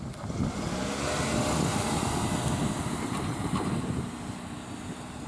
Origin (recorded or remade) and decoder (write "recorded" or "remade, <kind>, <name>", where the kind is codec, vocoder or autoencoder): recorded